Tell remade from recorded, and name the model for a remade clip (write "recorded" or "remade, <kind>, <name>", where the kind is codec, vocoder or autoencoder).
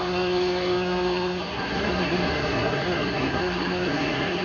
remade, codec, SNAC